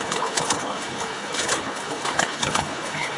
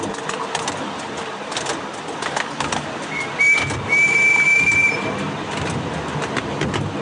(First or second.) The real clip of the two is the second